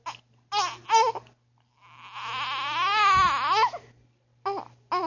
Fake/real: real